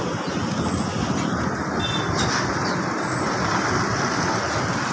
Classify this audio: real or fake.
real